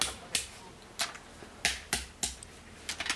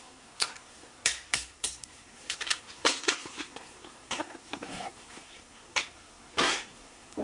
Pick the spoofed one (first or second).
second